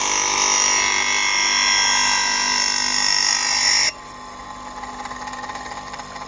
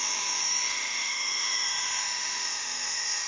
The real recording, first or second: first